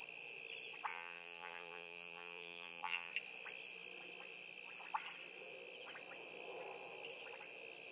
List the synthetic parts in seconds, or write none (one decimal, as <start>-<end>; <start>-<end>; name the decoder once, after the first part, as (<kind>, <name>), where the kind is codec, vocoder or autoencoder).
0.9-3.1 (vocoder, BigVGAN v2)